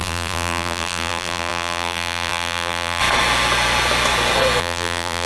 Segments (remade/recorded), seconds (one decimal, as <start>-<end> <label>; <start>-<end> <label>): 0.0-3.0 remade; 3.0-4.6 recorded; 4.6-5.3 remade